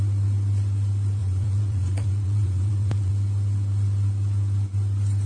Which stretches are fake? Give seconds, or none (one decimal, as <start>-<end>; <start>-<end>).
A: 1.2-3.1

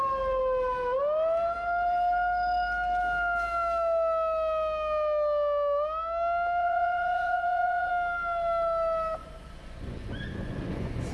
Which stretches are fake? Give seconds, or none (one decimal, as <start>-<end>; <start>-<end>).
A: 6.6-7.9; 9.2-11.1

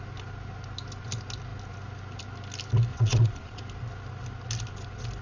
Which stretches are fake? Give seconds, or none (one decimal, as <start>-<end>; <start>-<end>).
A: 2.9-3.6

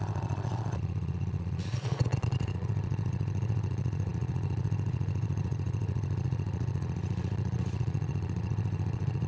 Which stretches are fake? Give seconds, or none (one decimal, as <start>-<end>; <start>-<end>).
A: 0.0-9.3